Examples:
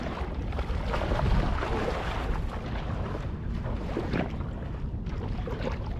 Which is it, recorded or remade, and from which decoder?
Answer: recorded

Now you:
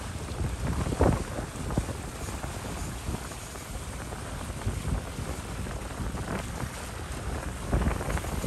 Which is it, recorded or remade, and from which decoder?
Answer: recorded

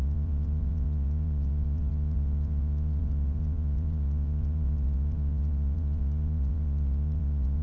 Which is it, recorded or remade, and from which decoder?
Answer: remade, vocoder, Vocos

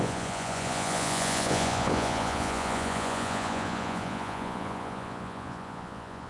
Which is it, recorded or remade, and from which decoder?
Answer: remade, vocoder, Vocos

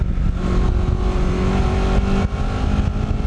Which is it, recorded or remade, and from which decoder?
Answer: recorded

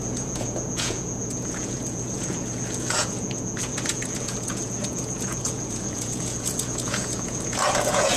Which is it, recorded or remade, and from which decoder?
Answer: remade, vocoder, Vocos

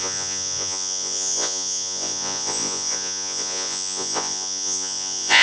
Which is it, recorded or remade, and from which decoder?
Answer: remade, vocoder, Vocos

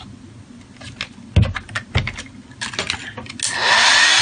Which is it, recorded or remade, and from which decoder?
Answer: recorded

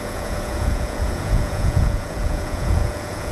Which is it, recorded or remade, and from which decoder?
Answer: remade, vocoder, Vocos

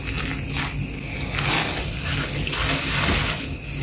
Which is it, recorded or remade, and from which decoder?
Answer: recorded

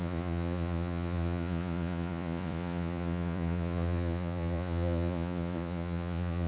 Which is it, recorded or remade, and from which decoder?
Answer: remade, vocoder, Vocos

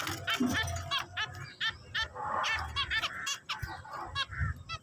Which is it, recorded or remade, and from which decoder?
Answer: recorded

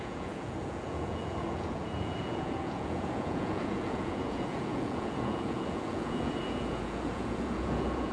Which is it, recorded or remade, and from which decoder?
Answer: remade, vocoder, Vocos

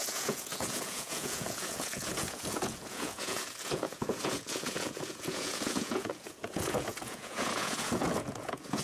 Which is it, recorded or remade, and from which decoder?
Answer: remade, vocoder, Vocos